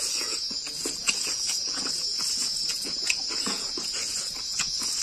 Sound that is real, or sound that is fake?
fake